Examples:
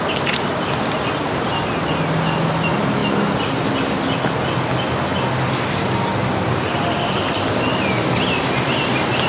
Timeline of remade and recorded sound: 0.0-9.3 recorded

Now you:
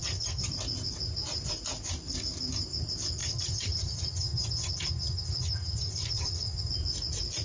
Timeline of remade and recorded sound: 0.0-0.5 remade; 0.5-3.2 recorded; 3.2-6.7 remade; 6.7-7.4 recorded

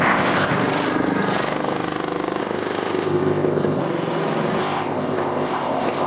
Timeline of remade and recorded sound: 0.0-0.5 remade; 0.5-2.4 recorded; 2.4-3.8 remade; 3.8-4.6 recorded; 4.6-6.1 remade